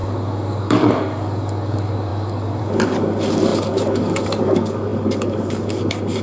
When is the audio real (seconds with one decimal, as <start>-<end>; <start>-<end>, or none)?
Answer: none